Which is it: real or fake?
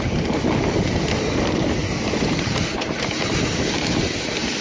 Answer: real